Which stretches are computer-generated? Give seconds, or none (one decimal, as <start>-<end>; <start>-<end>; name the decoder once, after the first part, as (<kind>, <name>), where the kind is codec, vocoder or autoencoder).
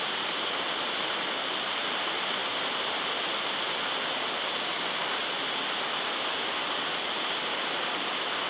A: none